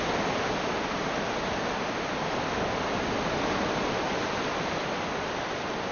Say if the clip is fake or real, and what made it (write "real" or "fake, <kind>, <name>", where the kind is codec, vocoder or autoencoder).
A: real